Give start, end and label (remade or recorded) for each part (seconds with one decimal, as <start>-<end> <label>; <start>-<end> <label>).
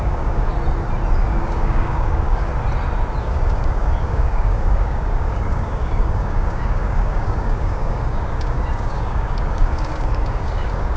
0.0-0.5 remade; 0.5-1.2 recorded; 1.2-2.5 remade; 2.5-3.2 recorded; 3.2-11.0 remade